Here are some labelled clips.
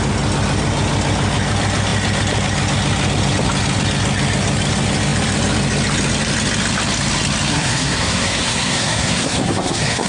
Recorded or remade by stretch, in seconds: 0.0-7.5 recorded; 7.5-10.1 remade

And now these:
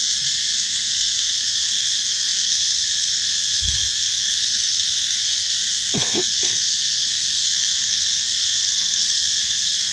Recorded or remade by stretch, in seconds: 0.0-9.9 remade

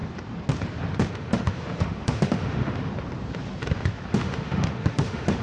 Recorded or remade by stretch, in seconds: 0.0-1.1 recorded; 1.1-2.9 remade; 2.9-4.1 recorded; 4.1-5.4 remade

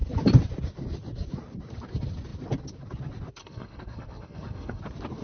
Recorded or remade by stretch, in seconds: 0.0-3.4 recorded; 3.4-4.8 remade; 4.8-5.2 recorded

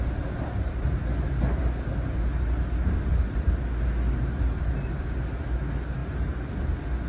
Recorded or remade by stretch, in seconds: 0.0-7.1 recorded

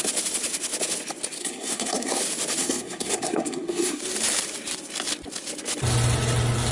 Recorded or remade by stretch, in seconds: 0.0-1.4 recorded; 1.4-2.2 remade; 2.2-2.6 recorded; 2.6-4.0 remade; 4.0-6.7 recorded

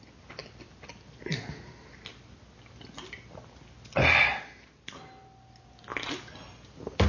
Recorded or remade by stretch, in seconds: 0.0-7.1 recorded

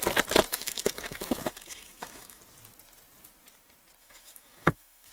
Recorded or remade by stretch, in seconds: 0.0-0.5 recorded; 0.5-2.4 remade; 2.4-4.0 recorded; 4.0-5.1 remade